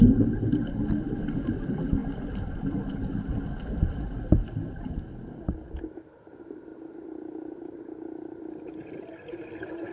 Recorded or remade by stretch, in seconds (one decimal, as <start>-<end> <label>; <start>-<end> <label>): 0.0-9.9 recorded